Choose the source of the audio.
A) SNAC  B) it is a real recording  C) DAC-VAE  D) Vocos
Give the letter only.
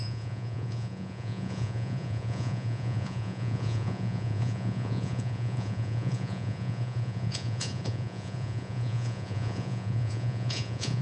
D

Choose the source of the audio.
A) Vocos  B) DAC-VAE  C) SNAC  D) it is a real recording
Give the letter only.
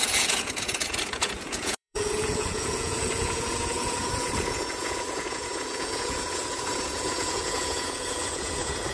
A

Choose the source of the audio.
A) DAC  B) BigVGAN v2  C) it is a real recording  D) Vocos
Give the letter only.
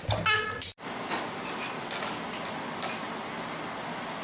C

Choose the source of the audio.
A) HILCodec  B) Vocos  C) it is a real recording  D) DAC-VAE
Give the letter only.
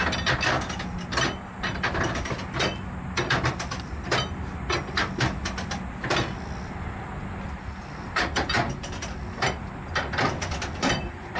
C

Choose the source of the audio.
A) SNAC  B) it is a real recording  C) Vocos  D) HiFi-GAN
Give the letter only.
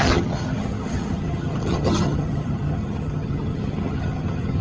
D